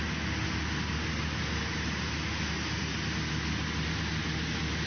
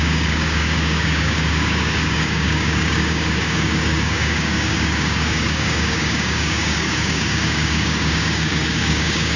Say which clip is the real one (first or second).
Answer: first